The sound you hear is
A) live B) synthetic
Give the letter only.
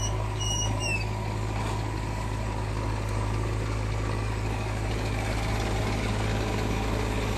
B